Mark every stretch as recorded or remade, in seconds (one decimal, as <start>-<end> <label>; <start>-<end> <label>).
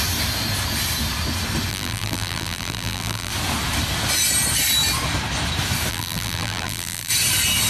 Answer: 0.0-1.7 recorded; 1.7-3.3 remade; 3.3-5.9 recorded; 5.9-7.1 remade; 7.1-7.7 recorded